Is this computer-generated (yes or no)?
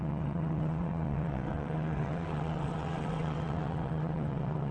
yes